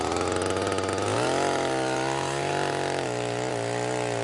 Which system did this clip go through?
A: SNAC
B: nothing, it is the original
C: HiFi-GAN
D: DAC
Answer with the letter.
B